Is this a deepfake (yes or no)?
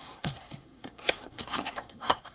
yes